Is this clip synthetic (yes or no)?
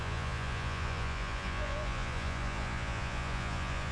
yes